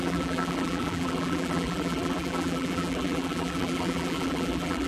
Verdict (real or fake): fake